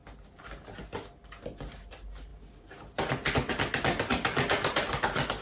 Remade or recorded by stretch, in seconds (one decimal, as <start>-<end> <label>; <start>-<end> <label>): 0.0-5.4 recorded